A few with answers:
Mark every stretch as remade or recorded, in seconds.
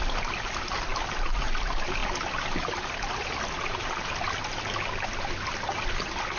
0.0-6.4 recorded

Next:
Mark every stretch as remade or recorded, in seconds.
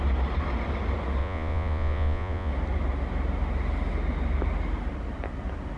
0.0-1.2 recorded; 1.2-2.5 remade; 2.5-5.8 recorded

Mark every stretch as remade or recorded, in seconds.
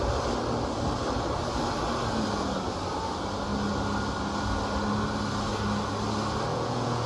0.0-6.5 recorded; 6.5-7.1 remade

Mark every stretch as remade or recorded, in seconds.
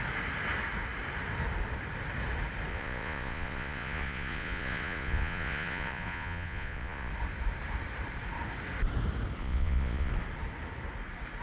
0.0-2.7 recorded; 2.7-7.1 remade; 7.1-9.4 recorded; 9.4-10.1 remade; 10.1-11.4 recorded